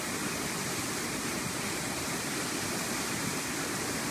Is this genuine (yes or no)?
yes